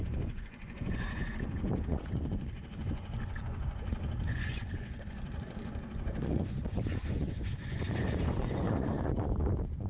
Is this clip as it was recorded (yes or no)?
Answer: no